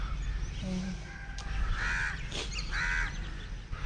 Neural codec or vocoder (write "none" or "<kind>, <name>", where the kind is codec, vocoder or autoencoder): none